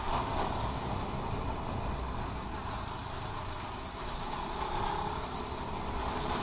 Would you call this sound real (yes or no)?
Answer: yes